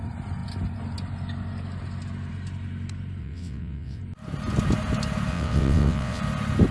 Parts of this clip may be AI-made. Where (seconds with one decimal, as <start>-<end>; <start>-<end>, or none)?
3.2-4.0; 5.3-6.2